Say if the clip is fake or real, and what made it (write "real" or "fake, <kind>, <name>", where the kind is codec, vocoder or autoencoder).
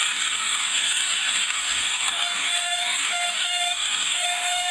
fake, codec, DAC